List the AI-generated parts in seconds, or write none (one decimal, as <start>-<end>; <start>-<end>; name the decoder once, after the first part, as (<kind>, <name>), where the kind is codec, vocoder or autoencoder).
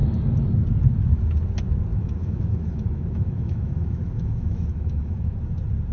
1.9-5.4 (autoencoder, DAC-VAE)